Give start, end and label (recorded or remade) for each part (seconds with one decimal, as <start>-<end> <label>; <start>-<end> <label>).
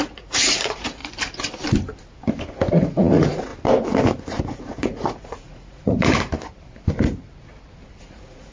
0.0-1.0 remade; 1.0-2.7 recorded; 2.7-3.5 remade; 3.5-4.4 recorded; 4.4-6.3 remade; 6.3-8.0 recorded; 8.0-8.5 remade